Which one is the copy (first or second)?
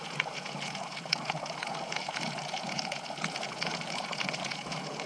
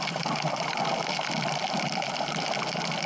first